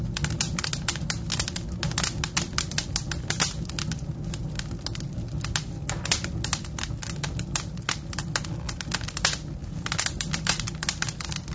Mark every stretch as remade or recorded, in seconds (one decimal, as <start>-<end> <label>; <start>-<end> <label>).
0.0-11.5 recorded